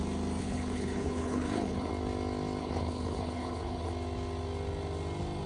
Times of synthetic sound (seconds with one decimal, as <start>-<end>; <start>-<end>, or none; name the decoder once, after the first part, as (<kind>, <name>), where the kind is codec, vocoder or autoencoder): 0.4-1.9 (codec, HILCodec); 2.6-3.9